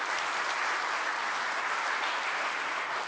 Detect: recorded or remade recorded